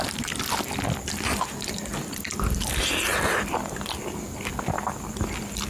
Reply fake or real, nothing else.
real